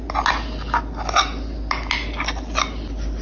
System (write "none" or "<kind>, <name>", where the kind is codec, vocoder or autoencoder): none